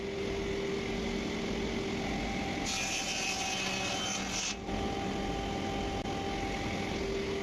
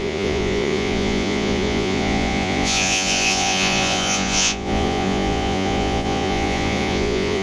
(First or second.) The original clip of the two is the first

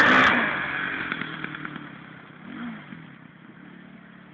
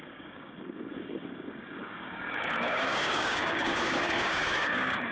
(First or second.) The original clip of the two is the first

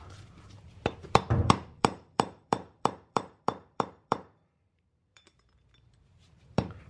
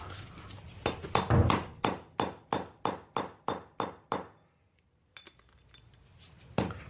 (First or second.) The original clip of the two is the second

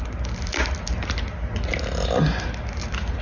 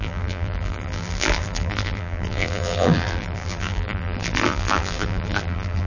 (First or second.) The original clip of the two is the first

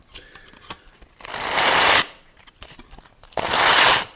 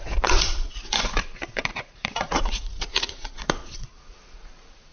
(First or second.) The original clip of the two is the first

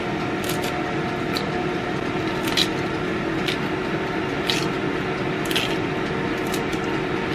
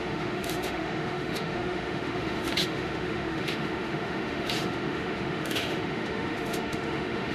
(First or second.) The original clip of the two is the first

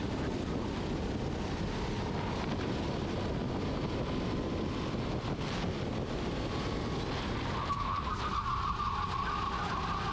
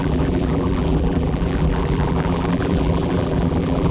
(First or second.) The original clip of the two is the first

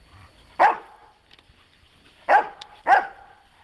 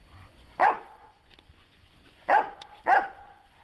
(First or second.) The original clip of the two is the first